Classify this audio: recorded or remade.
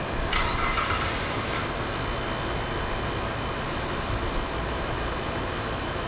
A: recorded